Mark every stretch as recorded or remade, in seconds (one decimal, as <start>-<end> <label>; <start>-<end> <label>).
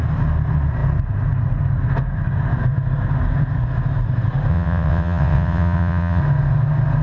0.0-4.5 recorded; 4.5-6.2 remade; 6.2-7.0 recorded